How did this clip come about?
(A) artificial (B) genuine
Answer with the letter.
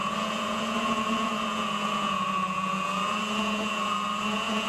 A